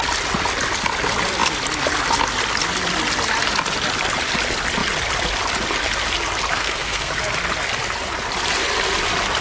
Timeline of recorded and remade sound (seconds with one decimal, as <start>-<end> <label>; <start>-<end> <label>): 0.0-6.5 recorded; 6.5-7.1 remade; 7.1-9.4 recorded